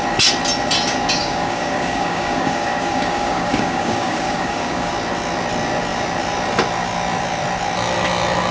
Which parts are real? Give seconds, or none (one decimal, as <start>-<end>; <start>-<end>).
0.0-1.2; 4.9-8.5